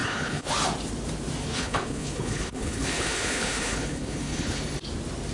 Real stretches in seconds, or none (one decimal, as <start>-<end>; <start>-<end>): 0.5-1.4; 4.6-5.3